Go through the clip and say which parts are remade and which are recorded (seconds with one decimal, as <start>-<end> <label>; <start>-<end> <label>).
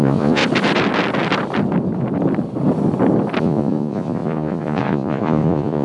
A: 0.0-0.4 remade; 0.4-3.4 recorded; 3.4-5.8 remade